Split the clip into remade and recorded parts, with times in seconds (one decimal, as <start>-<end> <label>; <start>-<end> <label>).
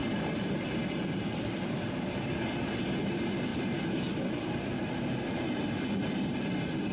0.0-6.9 recorded